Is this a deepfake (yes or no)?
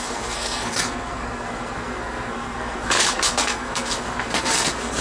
yes